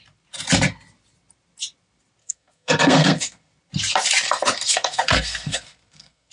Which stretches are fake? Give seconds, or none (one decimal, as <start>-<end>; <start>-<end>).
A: 2.2-3.5; 4.7-6.3